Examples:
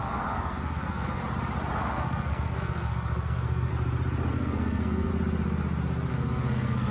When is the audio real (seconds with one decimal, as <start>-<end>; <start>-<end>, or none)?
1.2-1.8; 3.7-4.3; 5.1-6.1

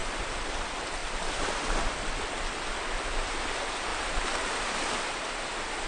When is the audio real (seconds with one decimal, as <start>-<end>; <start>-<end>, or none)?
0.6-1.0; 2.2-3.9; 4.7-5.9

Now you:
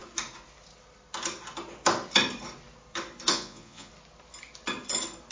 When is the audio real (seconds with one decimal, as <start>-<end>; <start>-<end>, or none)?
0.0-3.3; 3.9-5.3

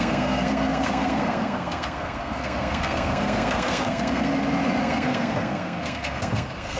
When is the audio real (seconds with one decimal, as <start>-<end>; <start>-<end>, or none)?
4.3-4.8

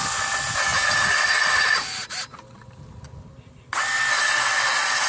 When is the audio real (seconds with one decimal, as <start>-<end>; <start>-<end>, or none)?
0.0-5.1